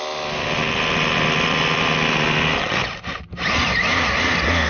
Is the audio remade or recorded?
recorded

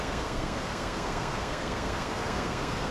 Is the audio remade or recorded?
remade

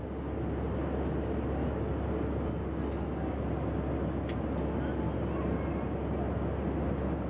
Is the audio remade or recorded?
recorded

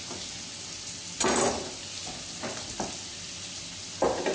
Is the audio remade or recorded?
recorded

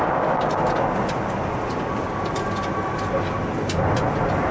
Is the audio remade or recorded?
recorded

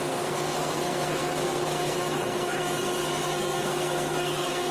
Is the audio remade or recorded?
remade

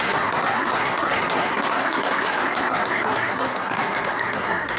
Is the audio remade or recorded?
remade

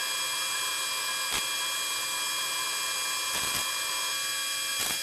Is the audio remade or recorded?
recorded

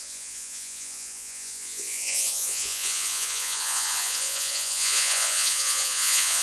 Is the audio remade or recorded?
remade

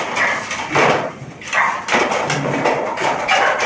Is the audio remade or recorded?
recorded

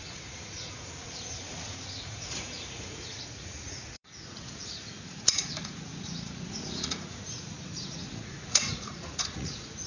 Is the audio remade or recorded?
remade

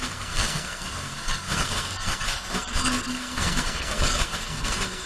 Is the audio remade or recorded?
remade